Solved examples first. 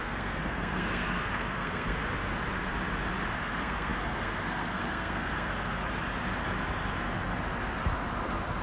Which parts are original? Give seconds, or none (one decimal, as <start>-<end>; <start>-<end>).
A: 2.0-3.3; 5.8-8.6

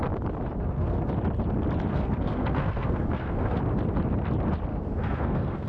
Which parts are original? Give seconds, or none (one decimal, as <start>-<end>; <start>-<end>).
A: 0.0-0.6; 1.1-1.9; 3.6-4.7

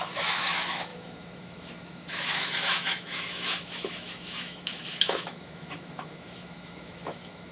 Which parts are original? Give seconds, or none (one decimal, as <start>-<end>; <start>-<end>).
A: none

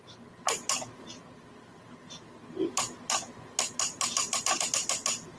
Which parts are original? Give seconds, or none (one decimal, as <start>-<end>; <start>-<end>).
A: 0.0-5.4